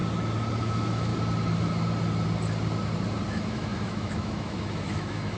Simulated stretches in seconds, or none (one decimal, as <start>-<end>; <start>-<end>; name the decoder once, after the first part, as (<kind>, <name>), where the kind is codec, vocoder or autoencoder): 0.6-1.1 (autoencoder, DAC-VAE); 3.3-5.4